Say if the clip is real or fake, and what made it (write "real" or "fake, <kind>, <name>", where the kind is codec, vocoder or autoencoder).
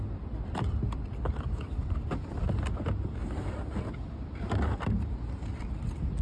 real